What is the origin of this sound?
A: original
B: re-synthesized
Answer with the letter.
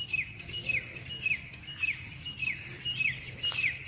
A